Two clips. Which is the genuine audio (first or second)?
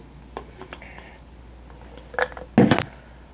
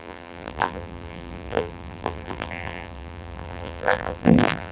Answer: first